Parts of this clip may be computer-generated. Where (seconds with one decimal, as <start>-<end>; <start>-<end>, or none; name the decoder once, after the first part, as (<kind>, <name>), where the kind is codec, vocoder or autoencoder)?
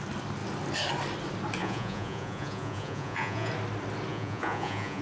1.6-3.5 (vocoder, Vocos); 4.1-5.0